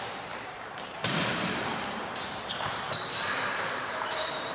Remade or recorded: remade